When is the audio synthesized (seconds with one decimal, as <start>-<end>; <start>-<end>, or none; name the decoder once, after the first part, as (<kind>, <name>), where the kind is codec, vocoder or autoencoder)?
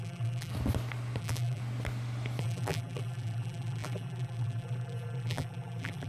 0.0-0.5 (vocoder, BigVGAN v2); 1.2-1.6; 2.4-6.1